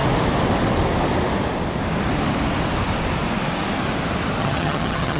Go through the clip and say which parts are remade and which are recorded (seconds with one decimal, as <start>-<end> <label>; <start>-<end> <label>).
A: 0.0-4.4 recorded; 4.4-5.2 remade